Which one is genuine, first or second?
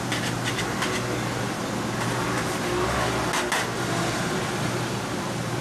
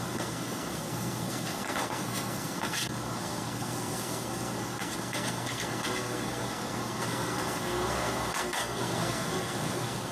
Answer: first